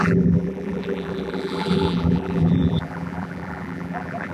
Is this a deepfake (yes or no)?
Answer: yes